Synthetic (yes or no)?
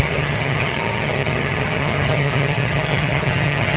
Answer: yes